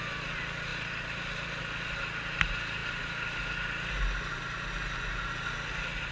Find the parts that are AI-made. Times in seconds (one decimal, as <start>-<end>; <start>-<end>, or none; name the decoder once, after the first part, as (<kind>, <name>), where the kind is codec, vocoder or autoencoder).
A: none